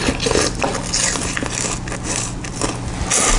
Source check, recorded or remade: recorded